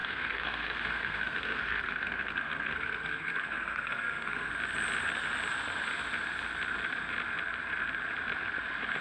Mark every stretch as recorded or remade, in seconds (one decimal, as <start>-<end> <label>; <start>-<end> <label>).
0.0-4.5 remade; 4.5-9.0 recorded